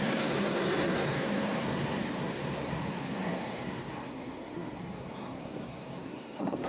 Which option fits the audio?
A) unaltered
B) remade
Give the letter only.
B